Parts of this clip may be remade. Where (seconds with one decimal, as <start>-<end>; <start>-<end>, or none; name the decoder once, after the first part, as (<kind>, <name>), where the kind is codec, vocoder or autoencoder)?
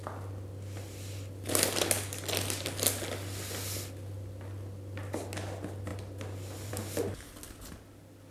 none